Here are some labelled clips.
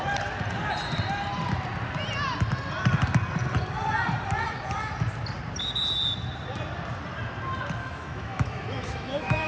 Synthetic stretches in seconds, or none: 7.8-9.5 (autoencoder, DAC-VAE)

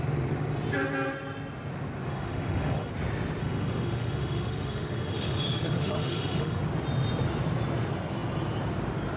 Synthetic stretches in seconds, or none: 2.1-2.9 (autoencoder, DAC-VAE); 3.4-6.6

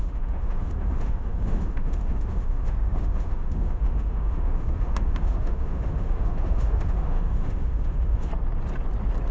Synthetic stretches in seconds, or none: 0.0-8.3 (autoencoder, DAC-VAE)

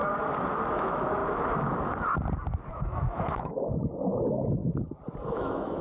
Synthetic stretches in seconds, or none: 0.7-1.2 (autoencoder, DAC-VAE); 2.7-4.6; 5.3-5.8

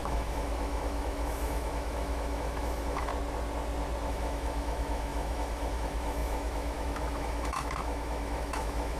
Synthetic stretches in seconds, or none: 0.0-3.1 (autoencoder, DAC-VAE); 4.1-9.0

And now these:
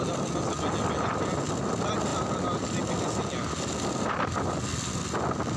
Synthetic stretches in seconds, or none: none

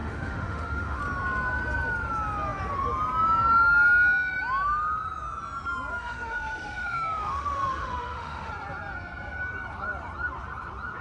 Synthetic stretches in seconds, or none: 0.0-1.0 (autoencoder, DAC-VAE); 5.9-8.5

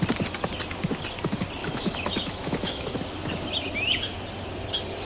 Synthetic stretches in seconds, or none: 1.6-3.0 (autoencoder, DAC-VAE)